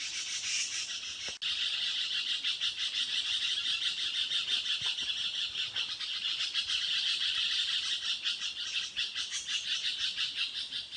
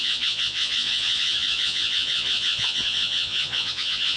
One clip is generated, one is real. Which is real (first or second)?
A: first